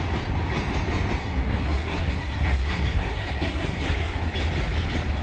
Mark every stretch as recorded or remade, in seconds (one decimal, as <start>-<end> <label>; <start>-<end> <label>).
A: 0.0-1.2 recorded; 1.2-4.3 remade; 4.3-5.2 recorded

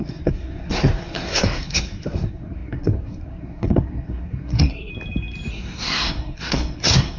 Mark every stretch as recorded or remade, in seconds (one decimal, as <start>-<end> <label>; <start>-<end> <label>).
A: 0.0-4.9 remade; 4.9-5.5 recorded; 5.5-7.2 remade